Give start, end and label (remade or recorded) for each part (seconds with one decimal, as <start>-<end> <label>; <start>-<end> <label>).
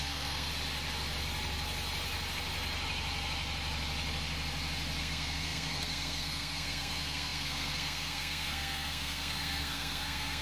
0.0-0.5 remade; 0.5-5.0 recorded; 5.0-10.4 remade